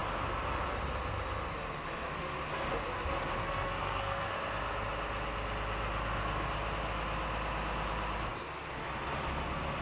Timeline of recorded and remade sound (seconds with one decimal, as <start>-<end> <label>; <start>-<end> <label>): 0.0-3.4 recorded; 3.4-4.3 remade; 4.3-9.8 recorded

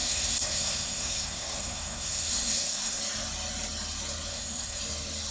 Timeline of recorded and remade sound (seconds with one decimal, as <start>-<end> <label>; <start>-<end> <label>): 0.0-3.0 remade; 3.0-4.3 recorded; 4.3-4.8 remade; 4.8-5.3 recorded

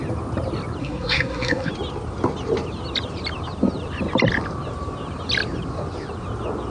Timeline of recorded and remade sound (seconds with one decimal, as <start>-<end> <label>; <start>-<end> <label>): 0.0-0.8 recorded; 0.8-1.7 remade; 1.7-6.7 recorded

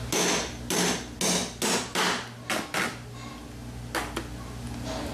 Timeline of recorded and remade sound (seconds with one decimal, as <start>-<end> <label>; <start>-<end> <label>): 0.0-5.1 recorded